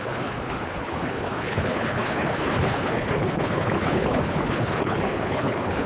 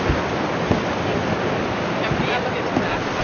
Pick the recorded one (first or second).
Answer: second